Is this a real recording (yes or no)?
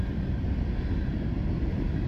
yes